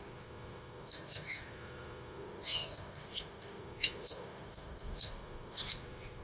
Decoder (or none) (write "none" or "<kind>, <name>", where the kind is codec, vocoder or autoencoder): autoencoder, DAC-VAE